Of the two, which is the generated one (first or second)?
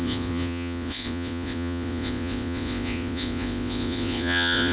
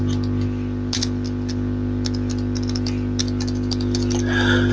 first